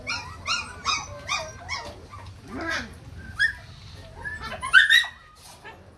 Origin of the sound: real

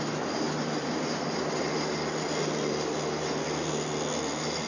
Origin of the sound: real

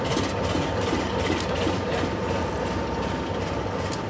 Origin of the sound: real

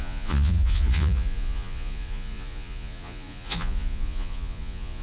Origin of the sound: fake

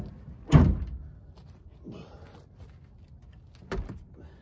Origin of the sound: real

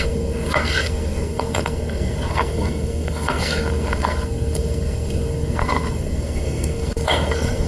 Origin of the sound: fake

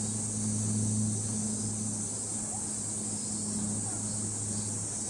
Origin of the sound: real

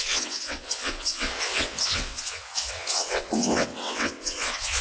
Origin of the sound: fake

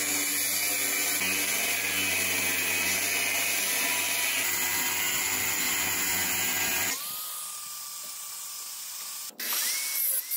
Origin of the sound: real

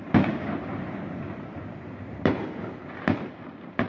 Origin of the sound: fake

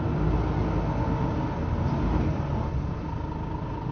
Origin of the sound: real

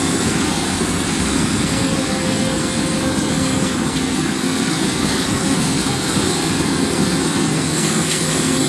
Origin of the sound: fake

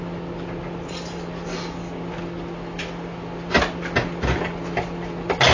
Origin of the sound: real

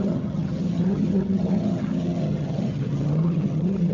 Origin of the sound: fake